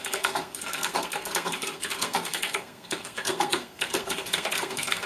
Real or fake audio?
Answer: fake